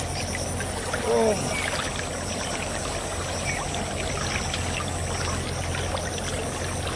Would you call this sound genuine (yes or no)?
yes